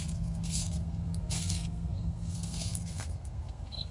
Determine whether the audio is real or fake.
fake